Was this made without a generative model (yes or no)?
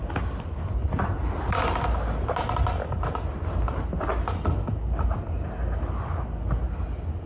yes